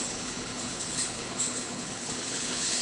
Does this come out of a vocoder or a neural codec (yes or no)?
yes